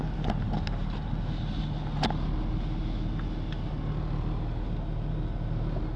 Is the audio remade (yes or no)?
no